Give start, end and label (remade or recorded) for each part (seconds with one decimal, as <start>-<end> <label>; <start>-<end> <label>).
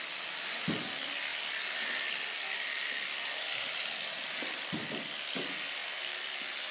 0.0-6.7 recorded